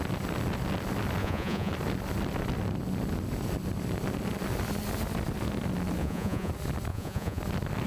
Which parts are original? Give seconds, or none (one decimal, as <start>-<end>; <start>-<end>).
0.0-1.2; 1.7-6.0; 6.5-6.9; 7.4-7.9